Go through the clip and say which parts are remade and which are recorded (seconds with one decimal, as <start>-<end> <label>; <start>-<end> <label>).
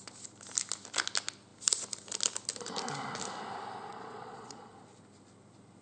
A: 0.0-3.9 recorded; 3.9-4.7 remade; 4.7-5.8 recorded